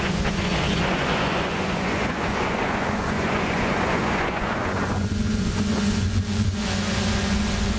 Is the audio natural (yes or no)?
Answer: no